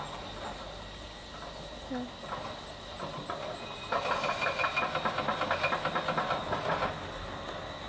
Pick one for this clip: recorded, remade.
recorded